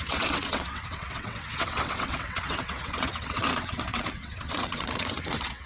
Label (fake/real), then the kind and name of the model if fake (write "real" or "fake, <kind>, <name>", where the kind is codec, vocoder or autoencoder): fake, vocoder, WaveNeXt